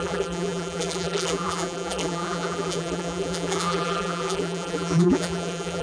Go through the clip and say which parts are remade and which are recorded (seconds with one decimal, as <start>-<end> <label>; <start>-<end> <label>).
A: 0.0-5.8 remade